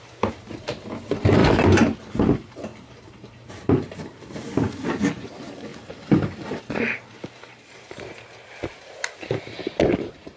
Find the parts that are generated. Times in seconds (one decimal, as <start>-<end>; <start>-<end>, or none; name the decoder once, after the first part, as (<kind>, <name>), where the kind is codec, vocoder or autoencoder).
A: 1.4-2.0 (vocoder, BigVGAN v2); 2.7-4.9; 5.7-6.6